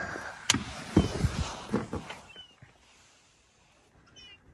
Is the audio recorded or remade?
recorded